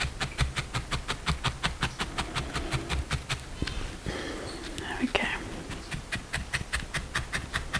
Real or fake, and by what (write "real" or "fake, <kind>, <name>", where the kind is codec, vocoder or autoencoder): real